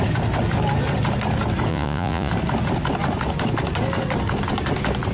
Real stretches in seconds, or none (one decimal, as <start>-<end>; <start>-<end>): 0.0-1.7; 2.3-5.1